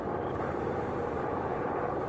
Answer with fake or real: fake